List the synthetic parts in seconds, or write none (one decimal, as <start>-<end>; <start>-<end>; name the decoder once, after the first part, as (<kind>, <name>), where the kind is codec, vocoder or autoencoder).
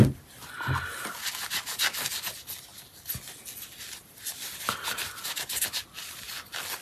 2.7-3.4 (vocoder, BigVGAN v2)